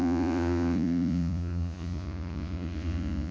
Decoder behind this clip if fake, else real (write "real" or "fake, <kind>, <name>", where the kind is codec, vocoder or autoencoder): fake, vocoder, Vocos